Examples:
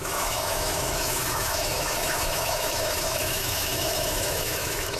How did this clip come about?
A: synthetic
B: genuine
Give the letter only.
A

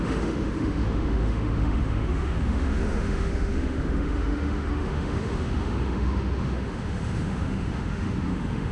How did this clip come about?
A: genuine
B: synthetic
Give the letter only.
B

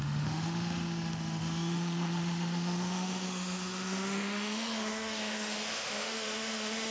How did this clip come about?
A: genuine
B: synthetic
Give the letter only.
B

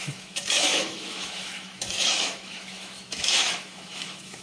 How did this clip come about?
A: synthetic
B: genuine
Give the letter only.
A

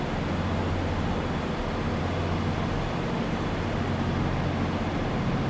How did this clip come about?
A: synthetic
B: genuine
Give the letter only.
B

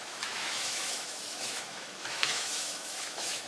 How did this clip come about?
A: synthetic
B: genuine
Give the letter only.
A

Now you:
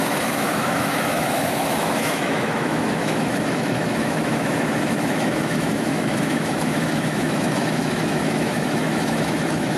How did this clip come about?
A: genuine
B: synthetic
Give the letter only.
B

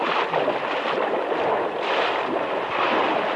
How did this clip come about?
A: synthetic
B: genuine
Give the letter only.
B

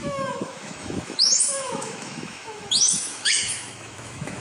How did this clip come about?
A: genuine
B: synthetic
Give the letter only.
B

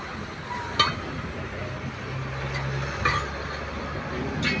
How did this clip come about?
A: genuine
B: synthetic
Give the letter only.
A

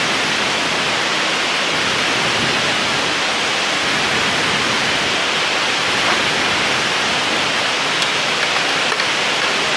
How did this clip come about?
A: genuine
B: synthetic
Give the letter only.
A